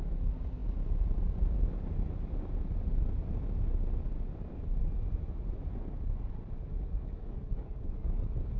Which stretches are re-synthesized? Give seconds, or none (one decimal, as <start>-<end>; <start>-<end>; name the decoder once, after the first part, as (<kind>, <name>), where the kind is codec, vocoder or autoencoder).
6.7-8.6 (codec, DAC)